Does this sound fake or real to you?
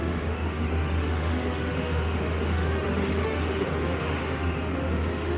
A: fake